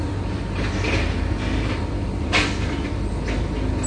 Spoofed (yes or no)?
no